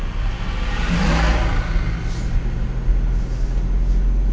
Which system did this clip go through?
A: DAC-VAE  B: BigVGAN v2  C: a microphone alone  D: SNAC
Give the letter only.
C